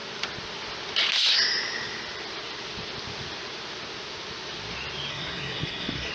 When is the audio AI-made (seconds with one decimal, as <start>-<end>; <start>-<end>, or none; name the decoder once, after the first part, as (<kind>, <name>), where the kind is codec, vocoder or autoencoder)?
5.1-6.1 (codec, SNAC)